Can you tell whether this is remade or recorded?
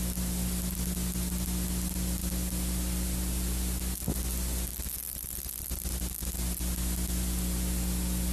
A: recorded